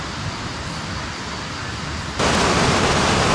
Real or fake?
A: real